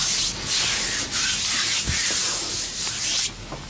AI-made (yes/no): no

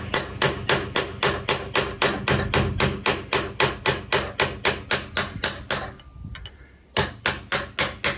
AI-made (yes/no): no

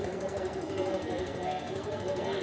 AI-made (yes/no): yes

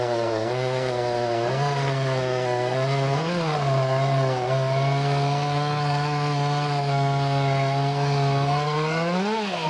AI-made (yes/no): yes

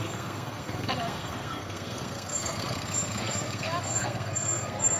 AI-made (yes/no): yes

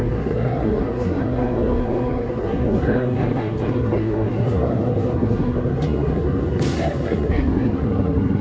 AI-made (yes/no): yes